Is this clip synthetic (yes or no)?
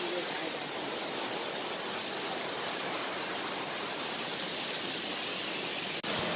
no